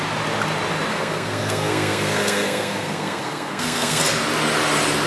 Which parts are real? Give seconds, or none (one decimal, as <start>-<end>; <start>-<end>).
0.0-0.9; 4.0-5.1